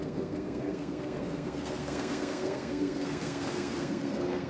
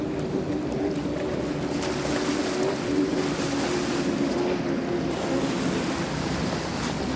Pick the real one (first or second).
second